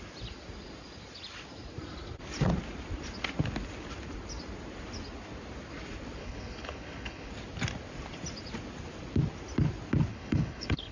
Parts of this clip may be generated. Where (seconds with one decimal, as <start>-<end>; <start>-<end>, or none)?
6.2-7.3; 10.1-10.9